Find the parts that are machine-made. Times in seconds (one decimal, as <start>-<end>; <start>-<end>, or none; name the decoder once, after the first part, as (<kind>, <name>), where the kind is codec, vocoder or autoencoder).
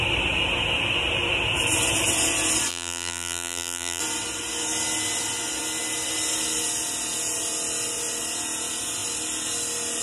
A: 2.7-4.0 (vocoder, BigVGAN v2)